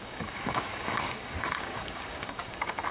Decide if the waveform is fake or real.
fake